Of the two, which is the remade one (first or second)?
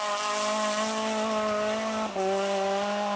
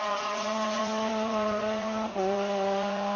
second